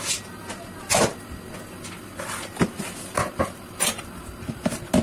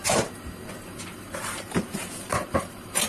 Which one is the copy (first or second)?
second